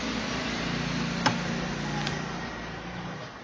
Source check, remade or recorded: recorded